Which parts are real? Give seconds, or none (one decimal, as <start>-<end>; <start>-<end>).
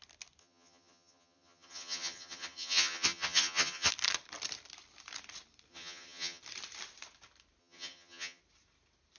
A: 0.0-0.4; 3.9-5.7; 6.4-7.6; 8.4-9.2